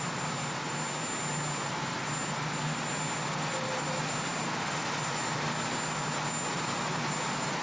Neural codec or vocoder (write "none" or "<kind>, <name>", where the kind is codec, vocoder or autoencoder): none